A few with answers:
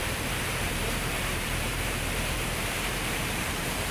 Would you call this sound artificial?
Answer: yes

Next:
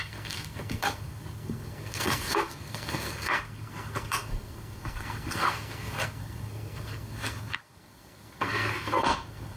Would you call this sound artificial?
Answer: yes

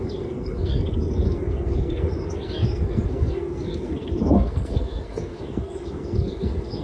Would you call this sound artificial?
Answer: yes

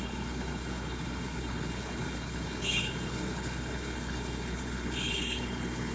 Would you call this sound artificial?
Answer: yes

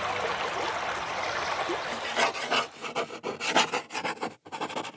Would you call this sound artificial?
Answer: no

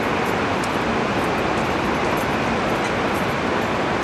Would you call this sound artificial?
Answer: no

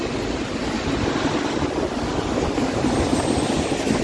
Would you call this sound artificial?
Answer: no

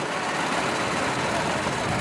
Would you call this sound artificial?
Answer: no